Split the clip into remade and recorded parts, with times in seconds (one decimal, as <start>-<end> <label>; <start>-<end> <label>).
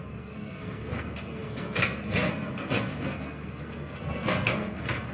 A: 0.0-5.1 remade